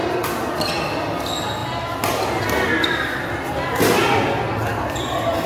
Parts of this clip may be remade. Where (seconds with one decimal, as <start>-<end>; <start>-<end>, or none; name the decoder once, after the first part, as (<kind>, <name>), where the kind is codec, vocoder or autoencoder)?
none